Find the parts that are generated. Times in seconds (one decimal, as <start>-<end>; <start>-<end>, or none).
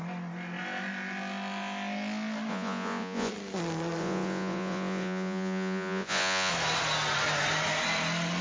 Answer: 2.5-3.3; 4.0-6.5